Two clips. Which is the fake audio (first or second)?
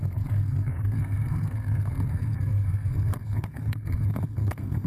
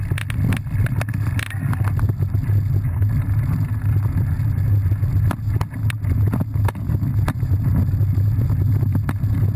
first